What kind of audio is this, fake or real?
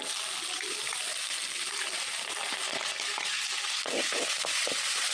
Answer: real